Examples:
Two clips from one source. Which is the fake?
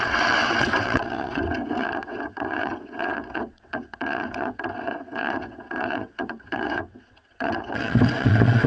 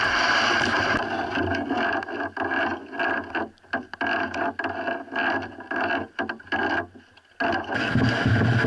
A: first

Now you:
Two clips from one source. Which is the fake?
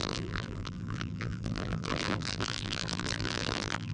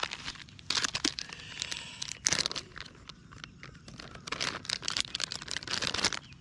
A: first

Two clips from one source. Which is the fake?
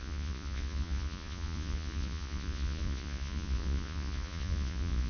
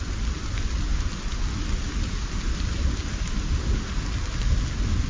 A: first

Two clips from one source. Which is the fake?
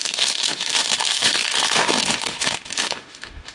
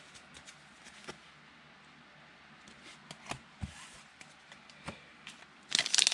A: first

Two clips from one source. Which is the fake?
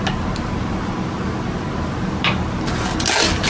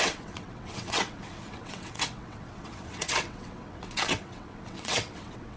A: second